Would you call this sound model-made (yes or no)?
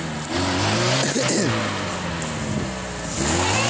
no